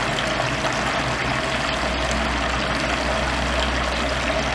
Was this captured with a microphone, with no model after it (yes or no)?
yes